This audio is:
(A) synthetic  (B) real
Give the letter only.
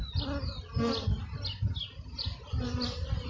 B